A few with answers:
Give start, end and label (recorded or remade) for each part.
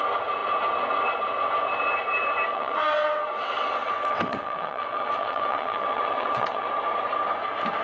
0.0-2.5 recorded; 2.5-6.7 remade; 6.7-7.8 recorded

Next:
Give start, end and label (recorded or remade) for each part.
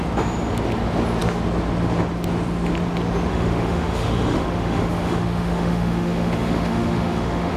0.0-3.3 recorded; 3.3-7.6 remade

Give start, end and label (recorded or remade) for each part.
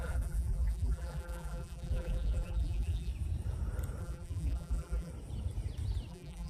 0.0-3.1 remade; 3.1-4.0 recorded; 4.0-5.1 remade; 5.1-6.1 recorded; 6.1-6.5 remade